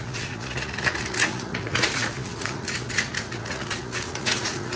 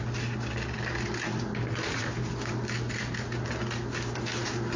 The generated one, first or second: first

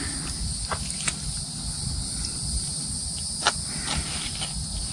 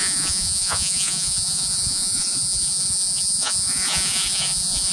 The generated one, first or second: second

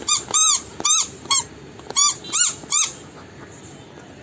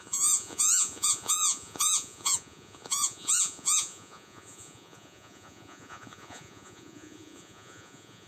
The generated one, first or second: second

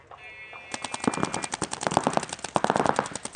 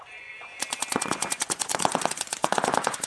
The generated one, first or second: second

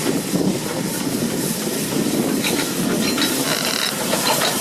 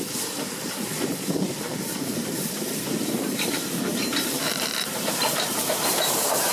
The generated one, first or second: second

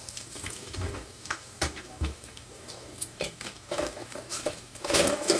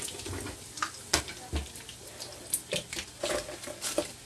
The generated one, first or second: first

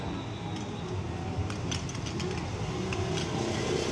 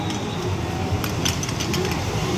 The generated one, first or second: second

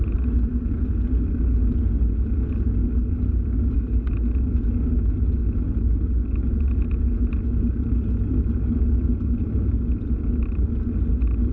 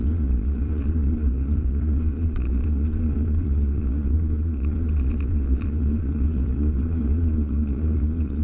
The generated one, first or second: second